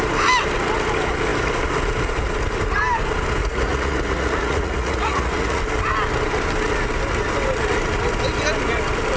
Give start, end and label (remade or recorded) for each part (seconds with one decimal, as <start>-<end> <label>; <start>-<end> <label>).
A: 0.0-3.4 recorded; 3.4-5.6 remade; 5.6-9.2 recorded